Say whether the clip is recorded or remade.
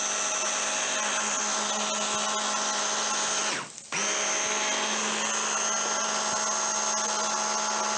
recorded